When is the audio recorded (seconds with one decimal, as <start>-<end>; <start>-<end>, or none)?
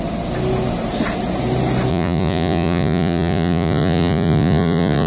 0.0-1.9